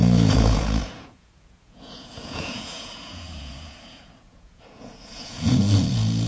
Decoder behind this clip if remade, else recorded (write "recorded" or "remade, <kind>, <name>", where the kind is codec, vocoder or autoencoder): remade, vocoder, Vocos